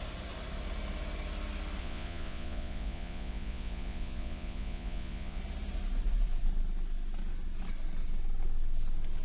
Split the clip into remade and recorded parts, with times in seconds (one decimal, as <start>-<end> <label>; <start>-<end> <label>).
0.0-1.8 recorded; 1.8-5.4 remade; 5.4-9.2 recorded